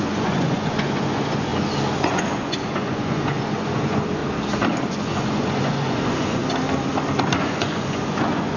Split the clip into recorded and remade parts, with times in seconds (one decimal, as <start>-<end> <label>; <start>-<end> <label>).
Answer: 0.0-1.5 remade; 1.5-2.0 recorded; 2.0-4.2 remade; 4.2-4.9 recorded; 4.9-6.4 remade; 6.4-7.4 recorded; 7.4-8.6 remade